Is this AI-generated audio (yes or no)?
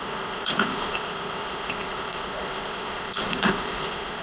yes